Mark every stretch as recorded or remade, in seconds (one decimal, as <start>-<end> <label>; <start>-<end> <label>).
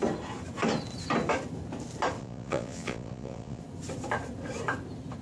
0.0-2.2 recorded; 2.2-3.6 remade; 3.6-5.2 recorded